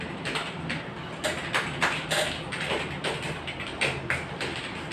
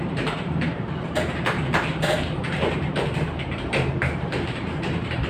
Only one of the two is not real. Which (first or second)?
second